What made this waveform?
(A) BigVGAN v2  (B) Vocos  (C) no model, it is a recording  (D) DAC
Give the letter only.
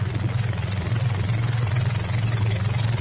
B